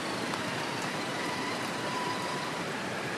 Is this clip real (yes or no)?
no